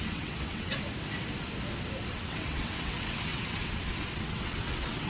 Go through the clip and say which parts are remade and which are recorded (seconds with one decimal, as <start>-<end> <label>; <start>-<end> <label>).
0.0-0.7 remade; 0.7-2.1 recorded; 2.1-5.1 remade